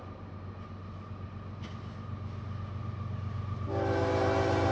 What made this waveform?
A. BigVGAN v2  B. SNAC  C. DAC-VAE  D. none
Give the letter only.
D